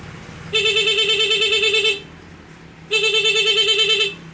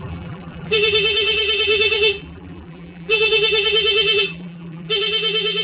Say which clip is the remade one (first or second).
second